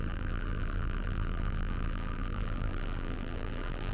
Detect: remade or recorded remade